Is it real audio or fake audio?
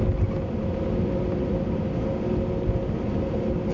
real